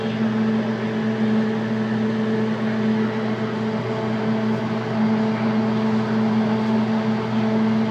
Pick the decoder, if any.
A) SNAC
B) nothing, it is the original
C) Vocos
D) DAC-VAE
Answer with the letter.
B